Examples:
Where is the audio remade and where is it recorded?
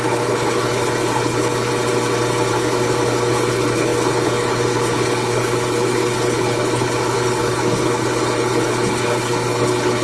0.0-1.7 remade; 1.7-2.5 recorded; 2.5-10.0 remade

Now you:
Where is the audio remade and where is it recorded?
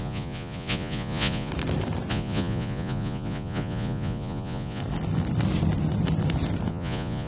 0.0-1.5 remade; 1.5-2.1 recorded; 2.1-4.8 remade; 4.8-6.7 recorded; 6.7-7.3 remade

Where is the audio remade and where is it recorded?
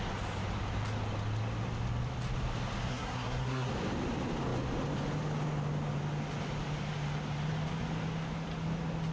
0.0-2.9 recorded; 2.9-3.7 remade; 3.7-9.1 recorded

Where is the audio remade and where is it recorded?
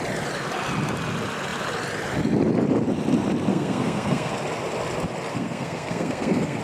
0.0-3.5 recorded; 3.5-4.3 remade; 4.3-5.3 recorded; 5.3-6.6 remade